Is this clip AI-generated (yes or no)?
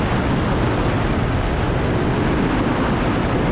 no